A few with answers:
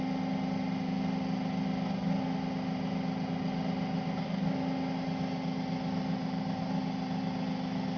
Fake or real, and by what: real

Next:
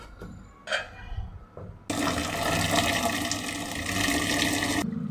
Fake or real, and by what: real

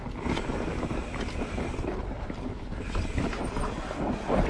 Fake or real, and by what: real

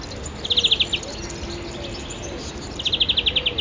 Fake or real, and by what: real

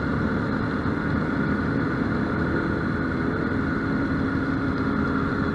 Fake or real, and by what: real